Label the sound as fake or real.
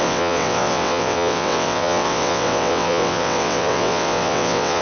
fake